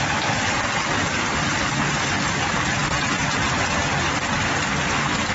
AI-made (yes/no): no